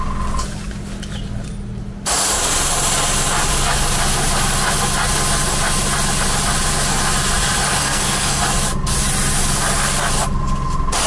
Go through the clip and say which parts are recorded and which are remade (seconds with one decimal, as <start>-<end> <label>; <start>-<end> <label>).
0.0-7.8 recorded; 7.8-8.4 remade; 8.4-11.1 recorded